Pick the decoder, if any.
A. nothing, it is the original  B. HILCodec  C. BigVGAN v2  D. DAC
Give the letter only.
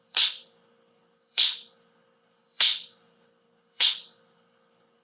B